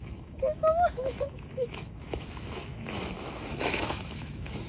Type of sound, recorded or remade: remade